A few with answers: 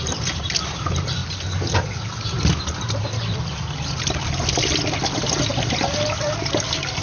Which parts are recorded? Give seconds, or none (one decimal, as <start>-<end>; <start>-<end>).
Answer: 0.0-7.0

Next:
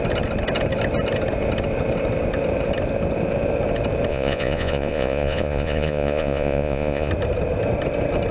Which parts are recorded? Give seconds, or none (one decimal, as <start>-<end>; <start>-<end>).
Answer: 0.0-4.1; 7.1-8.3

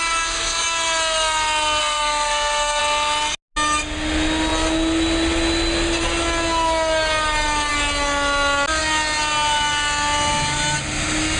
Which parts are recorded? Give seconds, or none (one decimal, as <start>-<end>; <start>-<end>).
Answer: 0.0-1.8; 2.8-11.4

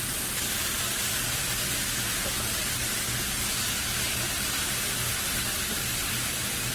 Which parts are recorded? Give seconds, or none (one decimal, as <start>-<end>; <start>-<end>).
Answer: 0.0-6.7